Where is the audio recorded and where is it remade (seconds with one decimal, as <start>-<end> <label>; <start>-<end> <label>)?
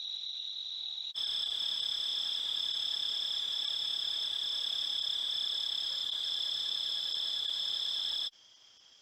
0.0-2.1 recorded; 2.1-2.7 remade; 2.7-6.0 recorded; 6.0-8.1 remade; 8.1-9.0 recorded